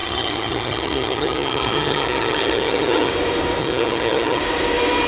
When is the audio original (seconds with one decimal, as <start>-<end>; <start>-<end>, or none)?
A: 3.1-3.6; 4.4-5.1